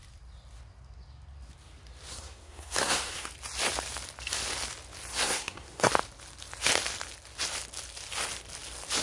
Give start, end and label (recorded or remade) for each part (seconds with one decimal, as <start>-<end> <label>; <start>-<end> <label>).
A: 0.0-2.1 recorded; 2.1-3.3 remade; 3.3-5.1 recorded; 5.1-5.9 remade; 5.9-9.0 recorded